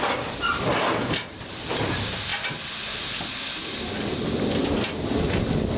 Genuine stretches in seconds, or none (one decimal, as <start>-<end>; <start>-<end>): 0.0-5.8